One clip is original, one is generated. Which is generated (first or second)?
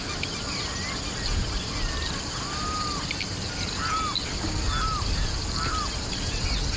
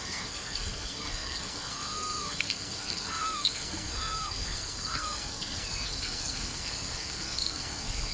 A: second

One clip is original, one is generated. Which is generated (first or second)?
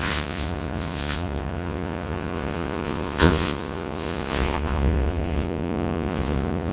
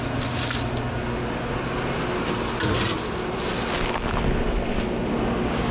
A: first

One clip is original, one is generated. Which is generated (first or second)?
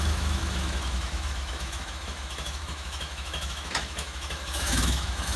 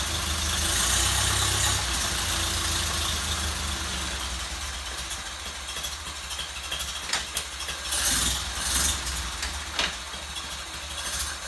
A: first